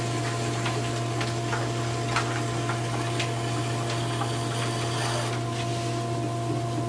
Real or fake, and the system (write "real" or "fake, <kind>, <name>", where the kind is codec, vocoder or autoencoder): real